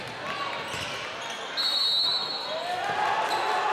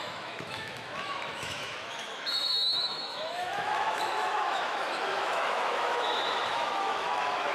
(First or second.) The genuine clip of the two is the first